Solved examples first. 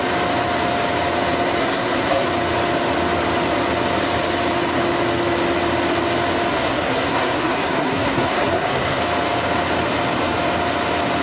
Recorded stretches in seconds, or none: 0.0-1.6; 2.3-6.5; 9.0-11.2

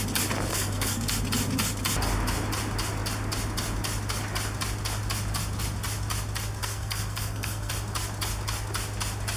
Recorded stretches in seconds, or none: 0.0-0.5; 1.1-6.6; 7.7-9.4

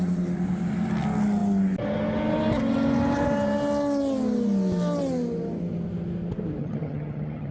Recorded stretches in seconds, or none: 0.0-6.6

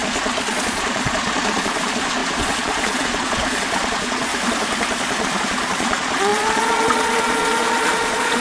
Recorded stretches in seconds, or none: 4.3-5.0

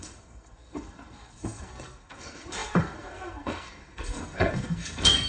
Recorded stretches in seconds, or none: none

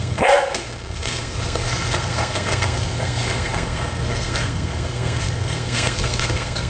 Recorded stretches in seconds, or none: none